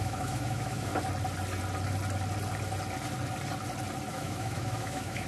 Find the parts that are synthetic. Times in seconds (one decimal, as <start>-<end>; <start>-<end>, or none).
0.0-0.9; 4.1-5.3